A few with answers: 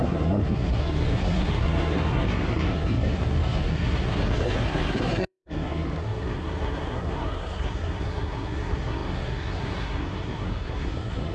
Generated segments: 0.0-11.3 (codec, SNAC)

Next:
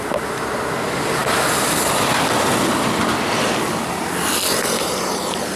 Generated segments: none

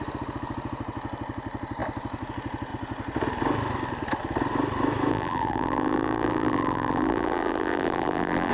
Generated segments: 5.1-8.5 (vocoder, BigVGAN v2)

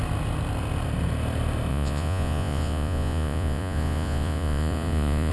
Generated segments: 1.7-5.3 (vocoder, Vocos)

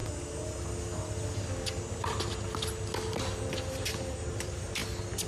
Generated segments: 3.2-4.8 (vocoder, BigVGAN v2)

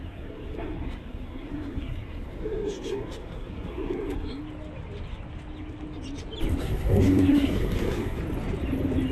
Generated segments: 0.0-4.4 (codec, SNAC); 6.6-8.2

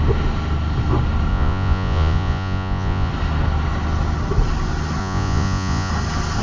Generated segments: 1.3-3.1 (vocoder, Vocos); 5.0-5.9